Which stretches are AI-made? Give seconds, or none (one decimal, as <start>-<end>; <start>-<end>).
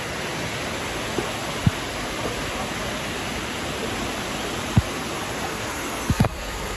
5.5-6.8